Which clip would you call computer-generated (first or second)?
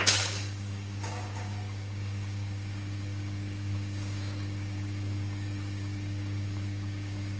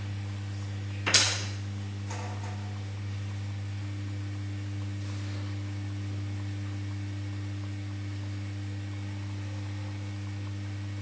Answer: first